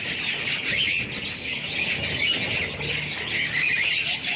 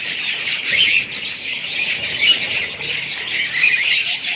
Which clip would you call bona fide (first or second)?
first